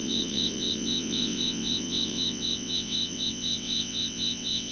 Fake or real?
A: fake